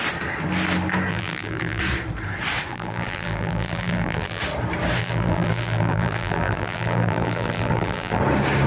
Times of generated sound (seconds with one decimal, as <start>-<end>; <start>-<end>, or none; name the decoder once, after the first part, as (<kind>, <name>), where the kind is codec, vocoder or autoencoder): 1.1-1.8 (vocoder, BigVGAN v2); 2.7-4.4; 5.0-8.2

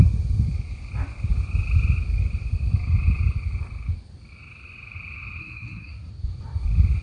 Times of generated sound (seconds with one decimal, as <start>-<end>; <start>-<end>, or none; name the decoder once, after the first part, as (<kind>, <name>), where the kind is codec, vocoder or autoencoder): 5.4-6.1 (codec, SNAC)

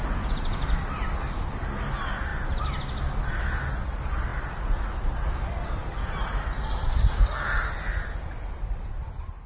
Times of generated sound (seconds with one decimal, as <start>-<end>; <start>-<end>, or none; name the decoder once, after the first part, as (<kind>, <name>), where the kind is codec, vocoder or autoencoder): none

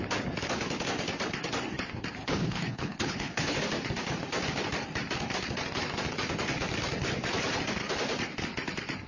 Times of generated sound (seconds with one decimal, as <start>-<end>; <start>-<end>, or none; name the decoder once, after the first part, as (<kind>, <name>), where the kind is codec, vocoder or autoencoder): 2.2-3.6 (codec, HILCodec)

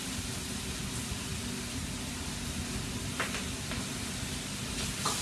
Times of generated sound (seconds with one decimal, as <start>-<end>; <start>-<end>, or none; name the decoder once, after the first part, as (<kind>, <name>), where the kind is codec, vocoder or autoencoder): none